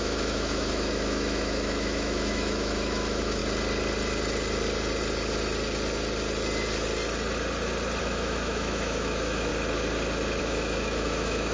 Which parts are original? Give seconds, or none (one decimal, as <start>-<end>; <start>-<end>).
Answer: 3.4-8.0; 9.5-10.4